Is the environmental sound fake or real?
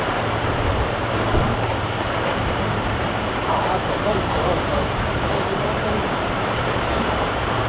fake